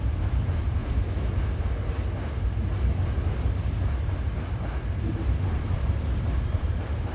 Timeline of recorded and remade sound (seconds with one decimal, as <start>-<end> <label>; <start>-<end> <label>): 0.0-0.8 remade; 0.8-5.1 recorded; 5.1-7.1 remade